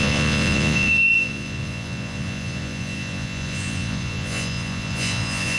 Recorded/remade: remade